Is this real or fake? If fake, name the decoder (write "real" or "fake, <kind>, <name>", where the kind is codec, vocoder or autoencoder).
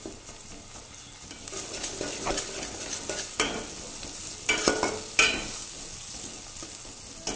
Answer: real